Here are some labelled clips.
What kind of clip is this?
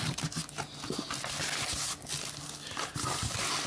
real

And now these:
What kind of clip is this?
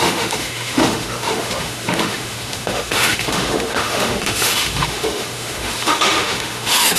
fake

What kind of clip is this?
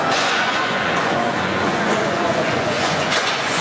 fake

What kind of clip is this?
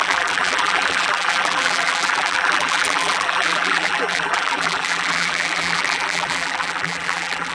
fake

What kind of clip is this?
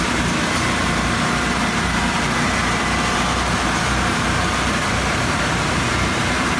fake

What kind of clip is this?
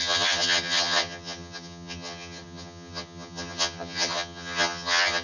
fake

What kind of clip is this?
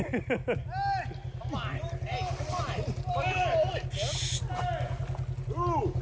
real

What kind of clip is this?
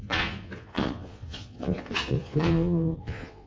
fake